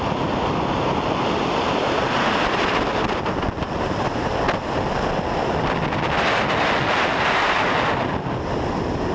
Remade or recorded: recorded